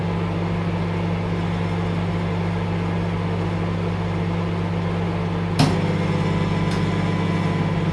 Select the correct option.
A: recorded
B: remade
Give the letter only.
A